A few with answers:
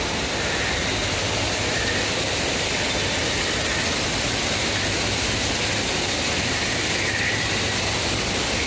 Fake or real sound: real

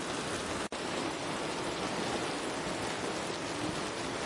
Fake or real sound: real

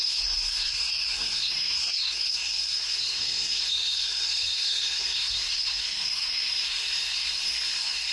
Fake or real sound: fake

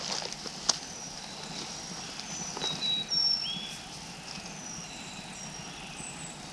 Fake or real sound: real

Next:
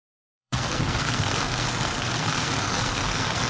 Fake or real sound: fake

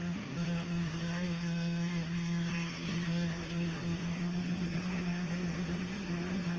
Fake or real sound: fake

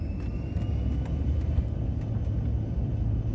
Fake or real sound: real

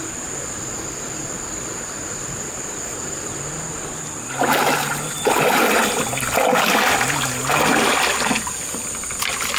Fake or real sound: real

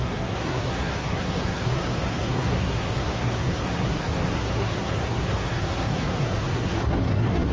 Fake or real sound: fake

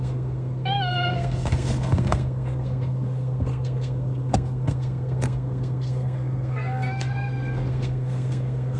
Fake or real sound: fake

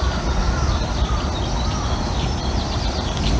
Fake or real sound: real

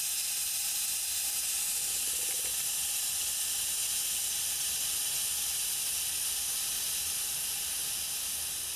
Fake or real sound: real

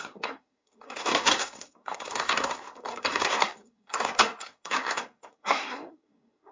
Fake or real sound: fake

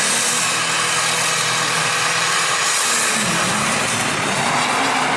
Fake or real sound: real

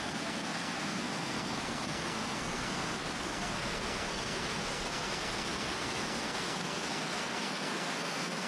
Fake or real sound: fake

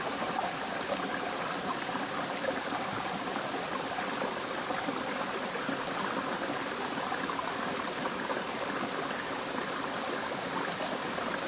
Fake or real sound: real